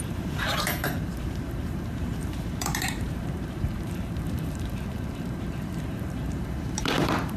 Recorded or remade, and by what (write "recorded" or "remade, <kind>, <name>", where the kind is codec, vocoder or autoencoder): remade, vocoder, BigVGAN v2